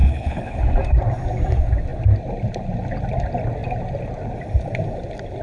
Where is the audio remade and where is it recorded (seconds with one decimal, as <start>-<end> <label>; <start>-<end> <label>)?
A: 0.0-0.6 remade; 0.6-5.4 recorded